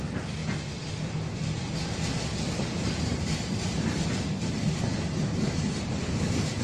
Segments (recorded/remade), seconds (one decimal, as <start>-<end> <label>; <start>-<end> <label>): 0.0-6.6 recorded